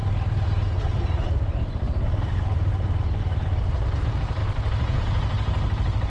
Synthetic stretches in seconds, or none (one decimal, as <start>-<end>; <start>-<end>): none